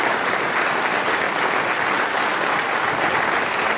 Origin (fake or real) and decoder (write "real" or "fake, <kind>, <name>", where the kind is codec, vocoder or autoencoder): real